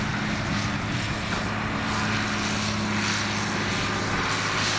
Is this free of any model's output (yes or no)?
yes